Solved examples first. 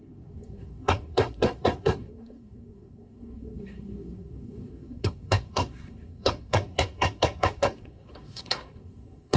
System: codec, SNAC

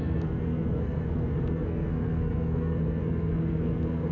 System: codec, SNAC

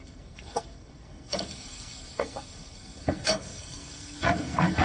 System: codec, SNAC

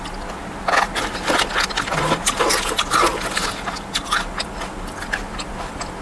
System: none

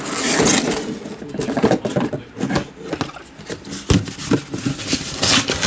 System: none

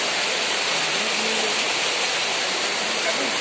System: none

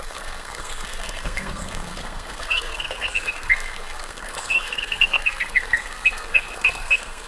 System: codec, SNAC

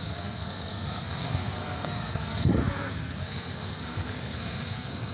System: codec, SNAC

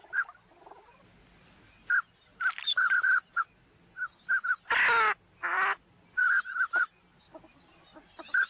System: none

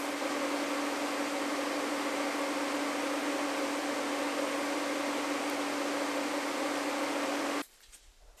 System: none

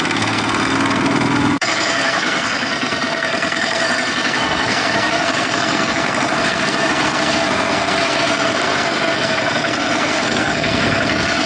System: codec, SNAC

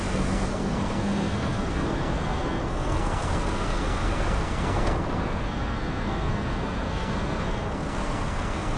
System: codec, SNAC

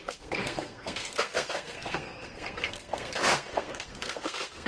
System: codec, SNAC